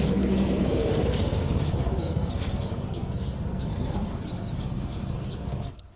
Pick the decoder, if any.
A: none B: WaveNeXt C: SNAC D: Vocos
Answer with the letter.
C